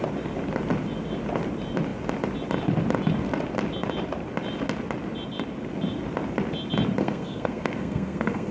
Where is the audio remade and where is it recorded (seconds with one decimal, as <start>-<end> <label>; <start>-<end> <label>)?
0.0-7.0 recorded; 7.0-8.5 remade